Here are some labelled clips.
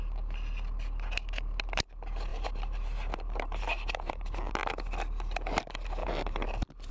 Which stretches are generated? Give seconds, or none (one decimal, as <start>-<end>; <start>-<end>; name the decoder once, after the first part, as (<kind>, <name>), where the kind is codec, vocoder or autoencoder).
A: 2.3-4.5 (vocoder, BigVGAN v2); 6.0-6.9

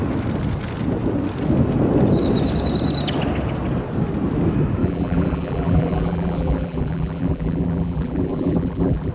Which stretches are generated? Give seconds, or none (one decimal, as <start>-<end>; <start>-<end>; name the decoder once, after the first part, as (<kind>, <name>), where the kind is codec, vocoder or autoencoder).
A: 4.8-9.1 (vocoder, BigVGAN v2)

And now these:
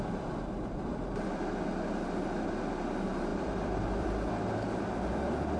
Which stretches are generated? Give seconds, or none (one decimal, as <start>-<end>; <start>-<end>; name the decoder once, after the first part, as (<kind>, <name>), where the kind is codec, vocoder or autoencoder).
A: 0.9-1.6 (vocoder, BigVGAN v2); 3.3-4.3

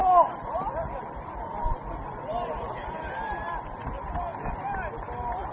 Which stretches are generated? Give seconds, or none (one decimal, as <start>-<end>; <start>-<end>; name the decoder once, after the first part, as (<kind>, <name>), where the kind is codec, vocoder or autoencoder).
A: 0.0-3.1 (vocoder, BigVGAN v2)

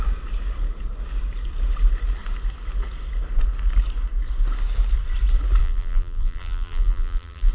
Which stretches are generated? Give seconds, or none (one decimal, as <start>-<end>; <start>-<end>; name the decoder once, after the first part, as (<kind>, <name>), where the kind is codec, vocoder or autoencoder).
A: 5.6-7.5 (vocoder, BigVGAN v2)

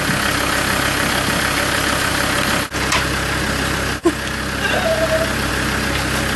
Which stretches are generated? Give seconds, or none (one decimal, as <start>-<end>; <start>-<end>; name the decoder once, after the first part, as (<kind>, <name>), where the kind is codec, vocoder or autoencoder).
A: none

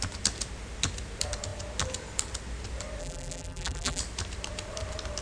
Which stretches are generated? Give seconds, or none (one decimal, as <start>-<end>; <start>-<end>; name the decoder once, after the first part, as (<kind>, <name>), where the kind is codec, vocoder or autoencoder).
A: 3.0-4.0 (vocoder, BigVGAN v2)

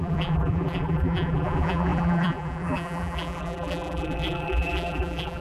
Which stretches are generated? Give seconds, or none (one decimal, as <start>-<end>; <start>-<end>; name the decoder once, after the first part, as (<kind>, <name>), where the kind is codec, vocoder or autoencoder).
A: 0.0-5.4 (vocoder, BigVGAN v2)